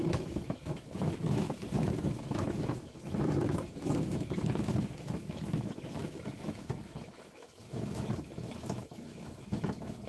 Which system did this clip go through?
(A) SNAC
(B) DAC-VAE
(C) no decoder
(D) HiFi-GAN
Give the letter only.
B